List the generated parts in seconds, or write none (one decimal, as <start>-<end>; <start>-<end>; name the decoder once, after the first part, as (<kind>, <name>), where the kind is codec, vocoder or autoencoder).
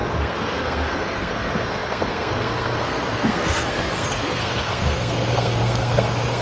0.0-6.4 (codec, SNAC)